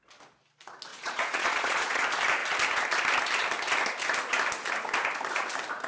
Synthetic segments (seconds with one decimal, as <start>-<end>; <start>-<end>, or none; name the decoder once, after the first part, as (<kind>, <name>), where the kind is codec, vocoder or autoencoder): 0.9-2.0 (vocoder, Vocos)

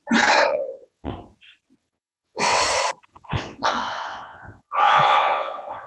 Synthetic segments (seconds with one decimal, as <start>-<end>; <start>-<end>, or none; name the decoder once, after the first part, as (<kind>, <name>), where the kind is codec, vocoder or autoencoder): 0.5-1.1 (vocoder, WaveNeXt); 1.8-2.6; 3.1-5.9

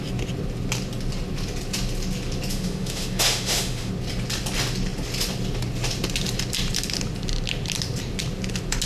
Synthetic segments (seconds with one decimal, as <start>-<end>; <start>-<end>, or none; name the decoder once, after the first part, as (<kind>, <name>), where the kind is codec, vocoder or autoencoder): 2.5-3.9 (autoencoder, DAC-VAE)

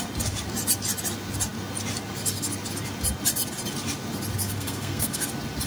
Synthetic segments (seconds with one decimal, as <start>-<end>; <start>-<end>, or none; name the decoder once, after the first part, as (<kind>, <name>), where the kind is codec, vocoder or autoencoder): 4.4-5.3 (codec, SNAC)